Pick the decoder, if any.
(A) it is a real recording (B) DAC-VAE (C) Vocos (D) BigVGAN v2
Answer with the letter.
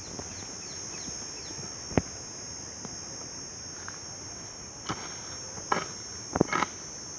A